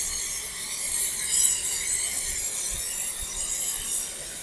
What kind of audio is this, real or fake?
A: real